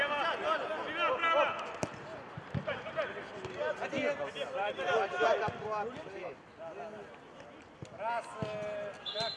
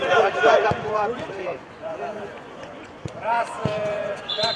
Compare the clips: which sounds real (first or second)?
first